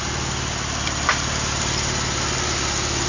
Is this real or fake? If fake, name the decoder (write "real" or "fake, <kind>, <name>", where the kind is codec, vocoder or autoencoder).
real